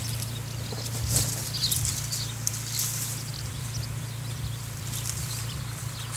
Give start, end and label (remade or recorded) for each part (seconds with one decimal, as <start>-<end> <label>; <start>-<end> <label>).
0.0-3.3 recorded; 3.3-5.8 remade; 5.8-6.2 recorded